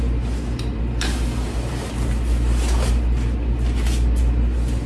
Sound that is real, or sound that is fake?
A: real